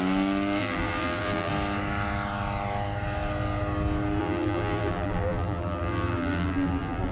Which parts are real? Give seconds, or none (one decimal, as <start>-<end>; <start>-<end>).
0.0-0.6; 1.5-4.2